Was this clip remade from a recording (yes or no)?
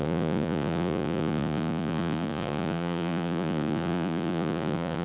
yes